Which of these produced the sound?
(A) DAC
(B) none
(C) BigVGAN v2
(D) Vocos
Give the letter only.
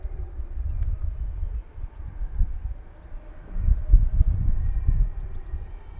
B